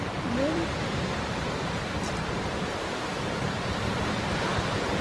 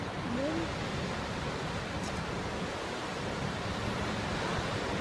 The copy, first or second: first